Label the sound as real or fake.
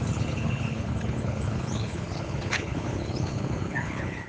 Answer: fake